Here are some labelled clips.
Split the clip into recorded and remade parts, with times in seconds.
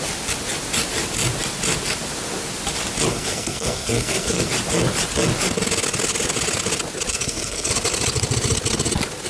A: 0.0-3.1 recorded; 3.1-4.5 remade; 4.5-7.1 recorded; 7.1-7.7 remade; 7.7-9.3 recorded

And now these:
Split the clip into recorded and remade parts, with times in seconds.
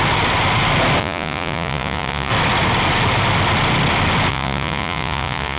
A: 0.0-1.0 recorded; 1.0-2.3 remade; 2.3-4.3 recorded; 4.3-5.6 remade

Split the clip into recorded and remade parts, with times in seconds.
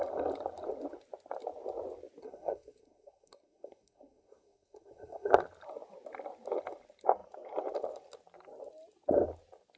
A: 0.0-2.2 recorded; 2.2-5.3 remade; 5.3-9.8 recorded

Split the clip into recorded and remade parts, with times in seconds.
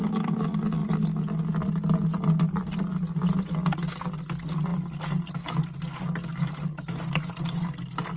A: 0.0-8.2 recorded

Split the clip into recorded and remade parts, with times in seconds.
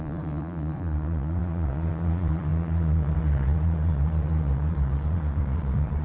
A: 0.0-6.0 remade